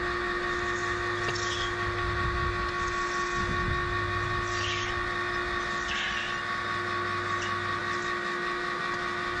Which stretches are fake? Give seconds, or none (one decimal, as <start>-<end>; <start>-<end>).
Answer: none